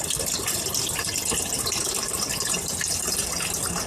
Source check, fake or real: real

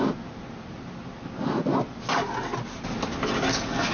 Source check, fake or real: real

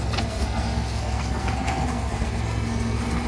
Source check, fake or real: fake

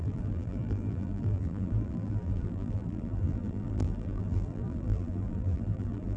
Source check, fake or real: fake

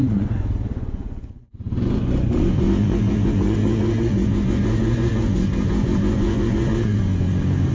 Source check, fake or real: fake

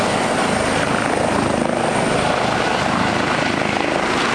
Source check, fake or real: real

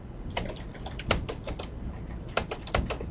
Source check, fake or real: real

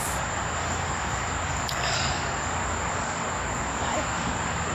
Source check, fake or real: fake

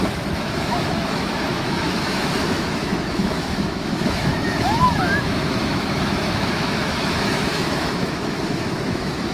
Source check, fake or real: fake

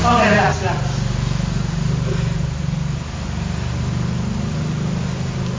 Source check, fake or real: real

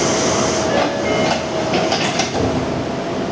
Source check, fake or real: real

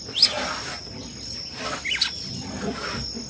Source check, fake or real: real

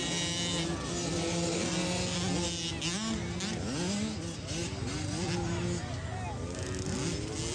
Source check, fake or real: real